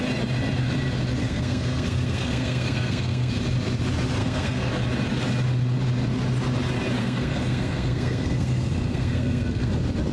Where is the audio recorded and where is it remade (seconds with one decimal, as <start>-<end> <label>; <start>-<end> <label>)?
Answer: 0.0-1.2 recorded; 1.2-3.3 remade; 3.3-4.2 recorded; 4.2-4.7 remade; 4.7-7.0 recorded; 7.0-9.7 remade; 9.7-10.1 recorded